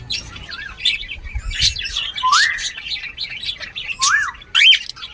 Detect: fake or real real